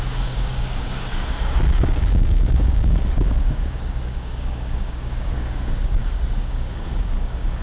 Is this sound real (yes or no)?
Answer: no